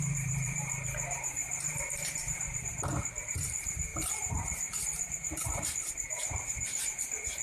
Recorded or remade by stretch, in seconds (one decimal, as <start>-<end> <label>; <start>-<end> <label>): 0.0-7.4 remade